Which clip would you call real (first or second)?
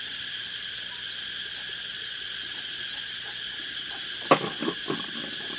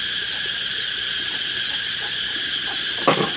first